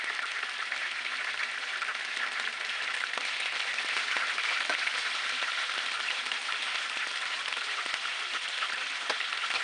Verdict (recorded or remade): recorded